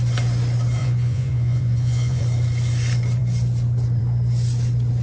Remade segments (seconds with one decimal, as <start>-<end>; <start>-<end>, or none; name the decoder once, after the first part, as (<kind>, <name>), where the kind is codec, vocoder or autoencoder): 0.8-2.2 (vocoder, Vocos)